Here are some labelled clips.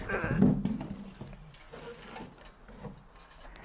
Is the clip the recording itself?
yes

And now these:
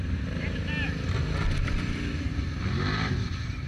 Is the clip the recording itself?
yes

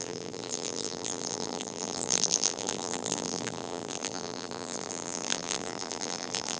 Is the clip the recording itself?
no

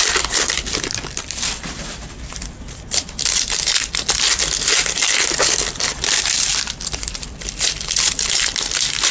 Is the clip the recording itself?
no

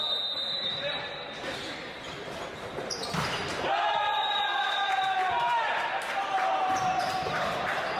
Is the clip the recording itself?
no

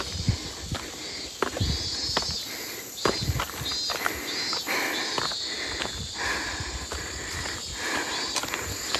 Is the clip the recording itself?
yes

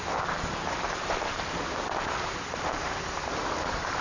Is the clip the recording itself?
no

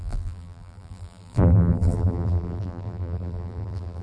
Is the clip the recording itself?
no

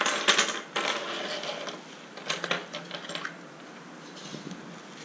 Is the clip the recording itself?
yes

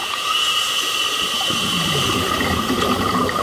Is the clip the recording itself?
no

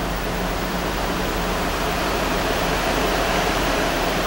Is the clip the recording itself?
no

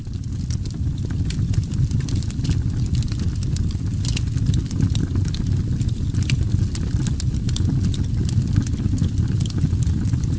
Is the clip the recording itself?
yes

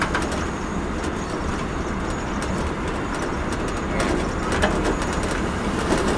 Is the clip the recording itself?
yes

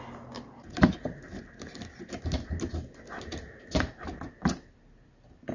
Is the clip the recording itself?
yes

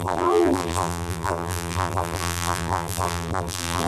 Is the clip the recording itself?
no